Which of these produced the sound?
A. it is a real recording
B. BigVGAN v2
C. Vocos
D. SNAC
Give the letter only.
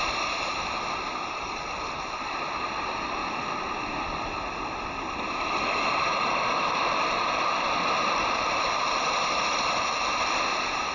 A